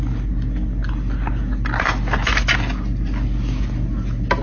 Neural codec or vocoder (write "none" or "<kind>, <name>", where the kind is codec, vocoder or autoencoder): none